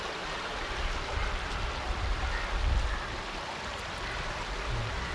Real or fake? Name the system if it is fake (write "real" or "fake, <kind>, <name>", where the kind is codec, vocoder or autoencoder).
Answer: real